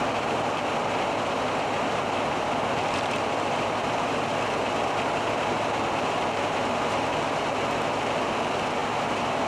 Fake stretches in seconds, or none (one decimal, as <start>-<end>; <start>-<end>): 0.0-8.8